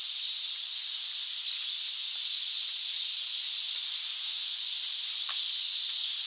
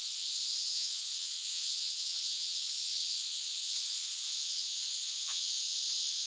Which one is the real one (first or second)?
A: first